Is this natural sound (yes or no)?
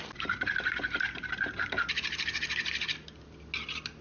yes